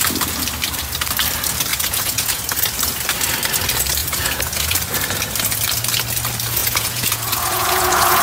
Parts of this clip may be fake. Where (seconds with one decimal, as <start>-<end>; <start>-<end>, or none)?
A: 1.7-2.4; 4.0-4.8; 6.6-8.2